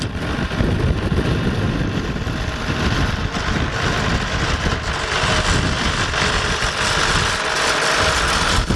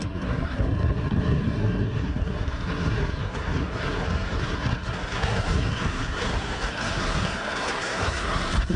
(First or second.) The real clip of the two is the first